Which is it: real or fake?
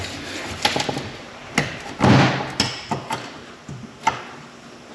real